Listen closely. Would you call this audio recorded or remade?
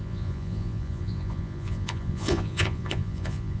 remade